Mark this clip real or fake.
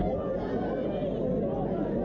real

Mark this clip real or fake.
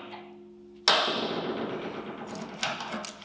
real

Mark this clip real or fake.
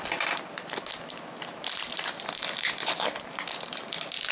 real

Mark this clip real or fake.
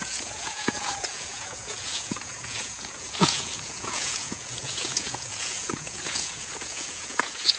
fake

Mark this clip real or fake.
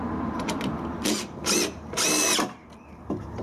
real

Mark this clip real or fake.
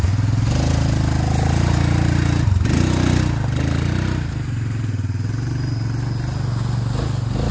real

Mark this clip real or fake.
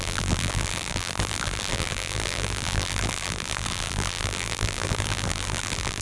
fake